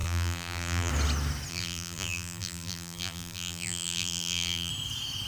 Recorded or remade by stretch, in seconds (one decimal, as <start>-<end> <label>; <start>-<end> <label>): 0.0-0.9 remade; 0.9-1.5 recorded; 1.5-4.7 remade; 4.7-5.3 recorded